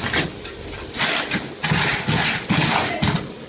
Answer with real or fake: real